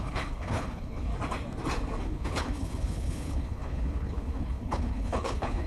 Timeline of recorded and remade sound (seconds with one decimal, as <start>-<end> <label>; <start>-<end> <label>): 0.0-1.1 remade; 1.1-2.0 recorded; 2.0-5.7 remade